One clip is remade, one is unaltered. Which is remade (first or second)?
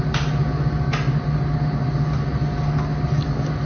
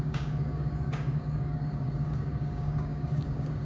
second